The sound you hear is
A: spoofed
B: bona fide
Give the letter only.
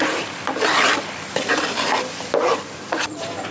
A